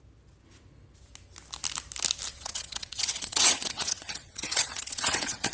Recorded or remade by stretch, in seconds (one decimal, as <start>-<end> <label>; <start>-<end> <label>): 0.0-2.3 recorded; 2.3-5.5 remade